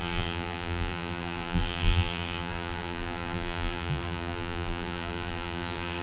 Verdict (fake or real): fake